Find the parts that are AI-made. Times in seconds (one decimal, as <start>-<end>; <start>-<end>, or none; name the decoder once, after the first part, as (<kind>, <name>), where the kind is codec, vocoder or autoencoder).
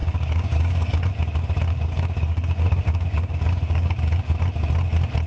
0.0-1.0 (codec, DAC); 1.7-4.3